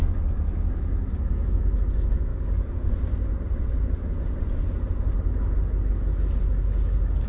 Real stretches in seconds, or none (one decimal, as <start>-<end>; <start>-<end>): 1.6-2.3; 2.9-7.3